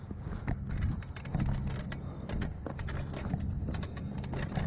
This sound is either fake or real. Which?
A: real